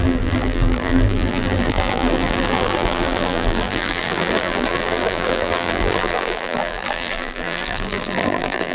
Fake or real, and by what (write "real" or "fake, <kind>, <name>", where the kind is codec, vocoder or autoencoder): fake, vocoder, BigVGAN v2